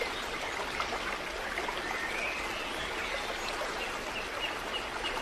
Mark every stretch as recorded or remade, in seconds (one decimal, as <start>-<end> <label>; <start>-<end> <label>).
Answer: 0.0-5.2 recorded